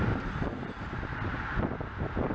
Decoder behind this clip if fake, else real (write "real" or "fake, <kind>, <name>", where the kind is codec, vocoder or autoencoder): real